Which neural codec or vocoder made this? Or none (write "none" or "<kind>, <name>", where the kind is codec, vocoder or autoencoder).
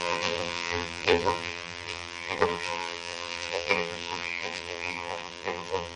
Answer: vocoder, BigVGAN v2